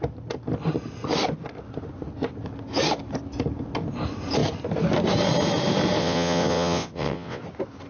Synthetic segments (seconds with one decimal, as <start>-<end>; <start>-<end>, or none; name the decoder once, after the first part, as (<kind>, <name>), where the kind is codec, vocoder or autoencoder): 6.0-7.4 (vocoder, WaveNeXt)